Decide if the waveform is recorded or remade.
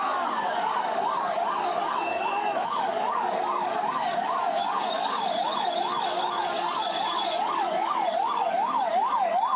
remade